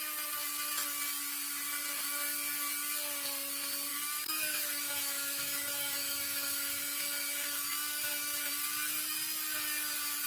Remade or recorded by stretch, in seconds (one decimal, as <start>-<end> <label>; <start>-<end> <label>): 0.0-3.9 recorded; 3.9-8.5 remade; 8.5-10.3 recorded